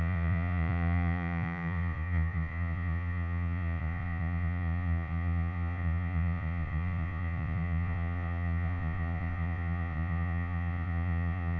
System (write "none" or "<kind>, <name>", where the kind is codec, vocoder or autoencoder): vocoder, Vocos